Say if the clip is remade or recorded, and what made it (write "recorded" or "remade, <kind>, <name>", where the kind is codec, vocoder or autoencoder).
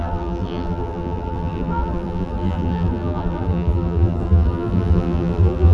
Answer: remade, vocoder, BigVGAN v2